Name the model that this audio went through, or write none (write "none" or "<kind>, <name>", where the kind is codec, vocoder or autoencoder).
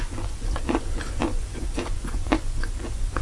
vocoder, Vocos